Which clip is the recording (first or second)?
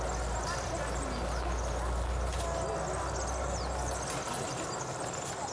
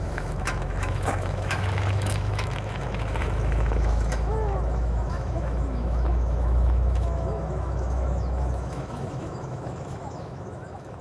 first